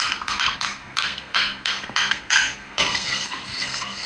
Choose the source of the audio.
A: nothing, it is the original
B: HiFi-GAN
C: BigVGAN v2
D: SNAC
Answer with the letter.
D